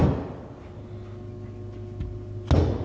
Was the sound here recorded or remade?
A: recorded